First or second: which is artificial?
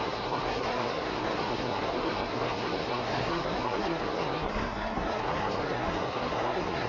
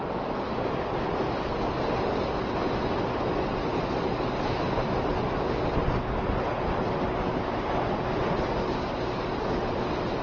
first